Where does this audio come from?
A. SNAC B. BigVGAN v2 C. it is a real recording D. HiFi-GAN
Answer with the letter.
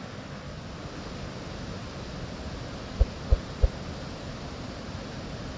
C